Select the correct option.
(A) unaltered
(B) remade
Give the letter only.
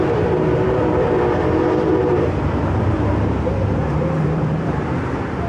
B